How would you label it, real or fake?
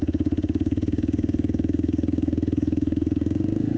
fake